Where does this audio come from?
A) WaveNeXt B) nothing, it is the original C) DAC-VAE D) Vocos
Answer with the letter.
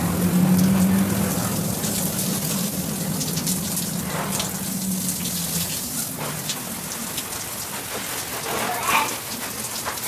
B